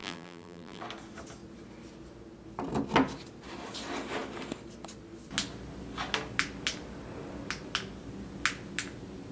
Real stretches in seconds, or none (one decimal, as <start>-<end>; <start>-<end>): 0.8-9.3